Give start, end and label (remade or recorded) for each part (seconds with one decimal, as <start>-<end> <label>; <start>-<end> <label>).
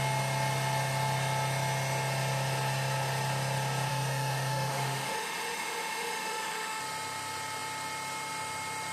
0.0-3.9 recorded; 3.9-6.8 remade; 6.8-8.9 recorded